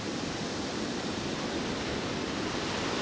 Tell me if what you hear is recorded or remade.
remade